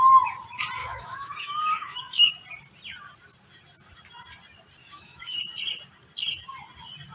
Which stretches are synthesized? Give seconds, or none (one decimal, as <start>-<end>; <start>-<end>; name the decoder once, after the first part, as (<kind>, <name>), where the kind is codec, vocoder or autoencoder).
0.8-2.3 (autoencoder, DAC-VAE); 4.8-5.4